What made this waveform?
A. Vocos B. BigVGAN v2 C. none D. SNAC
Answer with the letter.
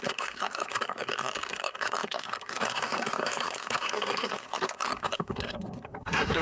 D